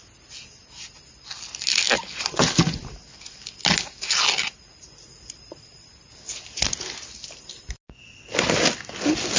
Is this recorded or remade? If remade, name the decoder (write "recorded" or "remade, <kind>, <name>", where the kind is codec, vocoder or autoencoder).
recorded